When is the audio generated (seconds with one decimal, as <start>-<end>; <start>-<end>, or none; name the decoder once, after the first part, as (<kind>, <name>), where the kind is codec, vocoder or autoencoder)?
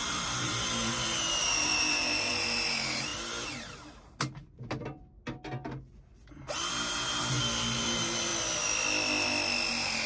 0.0-3.1 (vocoder, BigVGAN v2); 7.8-8.3; 9.7-10.1